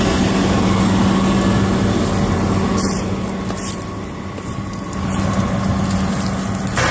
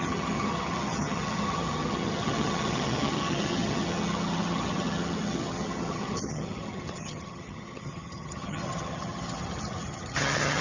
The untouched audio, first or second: first